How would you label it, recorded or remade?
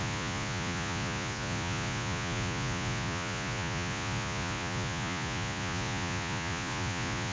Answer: remade